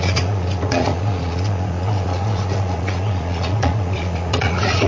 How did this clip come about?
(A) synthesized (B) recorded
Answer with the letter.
A